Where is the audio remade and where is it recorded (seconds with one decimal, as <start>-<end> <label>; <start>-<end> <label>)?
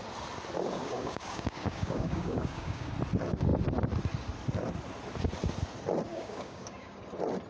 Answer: 0.0-0.8 recorded; 0.8-2.9 remade; 2.9-6.1 recorded; 6.1-7.0 remade; 7.0-7.5 recorded